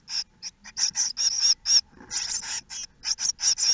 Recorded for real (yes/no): yes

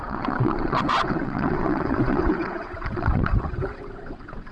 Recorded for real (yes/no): no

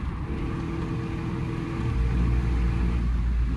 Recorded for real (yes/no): yes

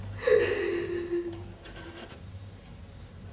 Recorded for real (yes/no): yes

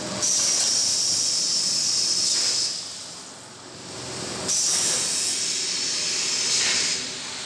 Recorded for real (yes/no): yes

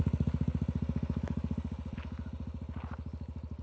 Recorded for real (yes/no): yes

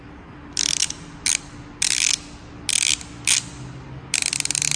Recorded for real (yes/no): yes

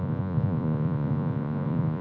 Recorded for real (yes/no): no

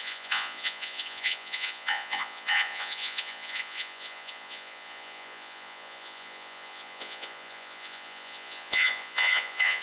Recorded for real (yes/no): no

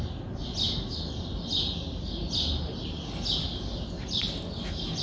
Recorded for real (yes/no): yes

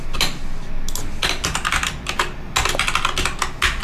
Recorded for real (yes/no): yes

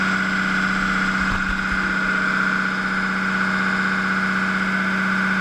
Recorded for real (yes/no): yes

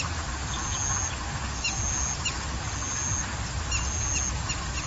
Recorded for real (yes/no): yes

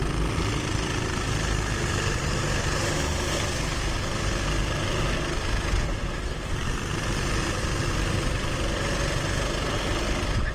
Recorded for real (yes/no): yes